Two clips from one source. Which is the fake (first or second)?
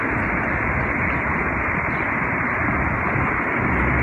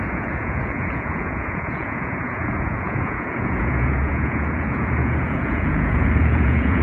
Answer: second